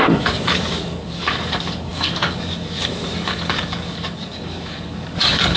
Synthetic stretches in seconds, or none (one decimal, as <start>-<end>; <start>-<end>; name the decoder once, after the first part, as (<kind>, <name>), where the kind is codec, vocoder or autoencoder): 0.0-5.6 (codec, DAC)